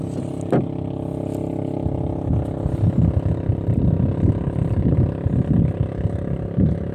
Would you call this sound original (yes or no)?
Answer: yes